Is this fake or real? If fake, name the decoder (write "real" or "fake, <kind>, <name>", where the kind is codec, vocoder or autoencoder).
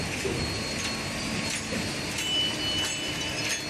real